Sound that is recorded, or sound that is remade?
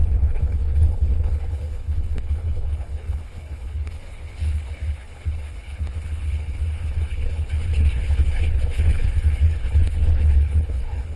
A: remade